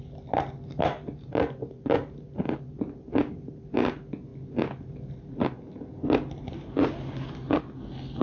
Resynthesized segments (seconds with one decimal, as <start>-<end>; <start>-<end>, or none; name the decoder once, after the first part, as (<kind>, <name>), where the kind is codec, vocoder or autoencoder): none